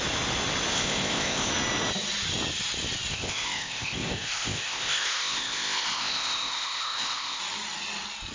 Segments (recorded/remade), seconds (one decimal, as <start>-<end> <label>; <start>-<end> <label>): 0.0-0.7 recorded; 0.7-1.5 remade; 1.5-3.1 recorded; 3.1-7.4 remade; 7.4-8.3 recorded

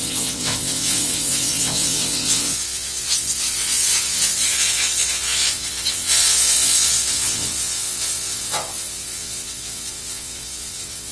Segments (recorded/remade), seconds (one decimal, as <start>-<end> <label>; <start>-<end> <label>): 0.0-11.1 remade